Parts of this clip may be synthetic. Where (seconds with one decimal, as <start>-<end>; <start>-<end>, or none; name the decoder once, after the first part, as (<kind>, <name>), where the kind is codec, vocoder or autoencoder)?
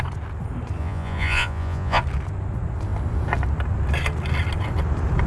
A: 0.8-2.0 (vocoder, Vocos)